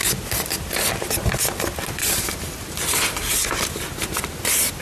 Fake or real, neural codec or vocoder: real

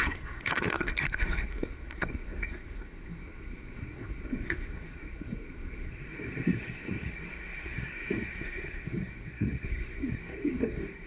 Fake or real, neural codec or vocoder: fake, codec, SNAC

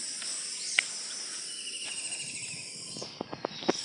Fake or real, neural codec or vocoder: real